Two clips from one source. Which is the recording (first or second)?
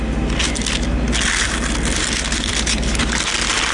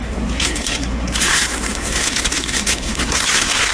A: first